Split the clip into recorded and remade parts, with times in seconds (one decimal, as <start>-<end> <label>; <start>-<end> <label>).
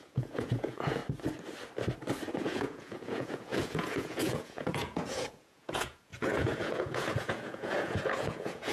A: 0.0-1.0 remade; 1.0-2.4 recorded; 2.4-8.7 remade